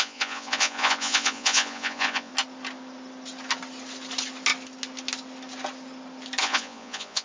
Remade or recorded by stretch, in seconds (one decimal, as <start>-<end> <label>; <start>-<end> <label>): 0.0-2.3 remade; 2.3-6.4 recorded; 6.4-7.2 remade